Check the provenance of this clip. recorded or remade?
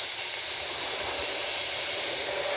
remade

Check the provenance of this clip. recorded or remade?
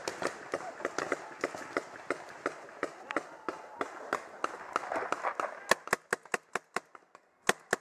recorded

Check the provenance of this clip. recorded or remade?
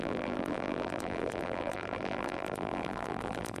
remade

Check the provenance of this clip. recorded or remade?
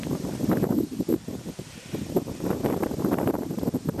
remade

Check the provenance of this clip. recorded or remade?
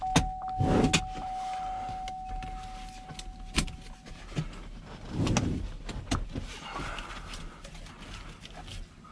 recorded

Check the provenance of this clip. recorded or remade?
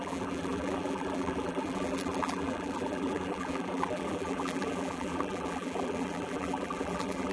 remade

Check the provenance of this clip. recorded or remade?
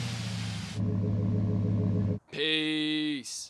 recorded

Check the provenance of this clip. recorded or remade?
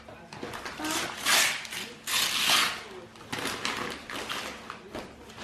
recorded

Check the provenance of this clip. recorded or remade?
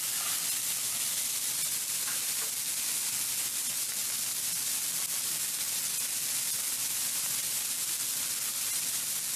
recorded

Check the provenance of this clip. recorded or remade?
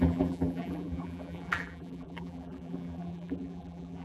remade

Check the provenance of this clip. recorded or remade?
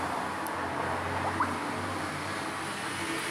recorded